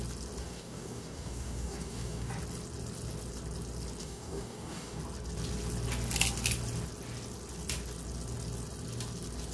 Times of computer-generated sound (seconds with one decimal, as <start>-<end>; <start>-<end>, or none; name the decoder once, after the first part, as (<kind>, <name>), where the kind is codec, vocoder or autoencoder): 0.4-2.3 (codec, DAC); 4.0-5.0